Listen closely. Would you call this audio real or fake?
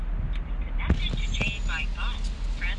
real